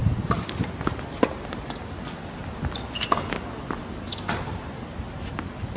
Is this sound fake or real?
real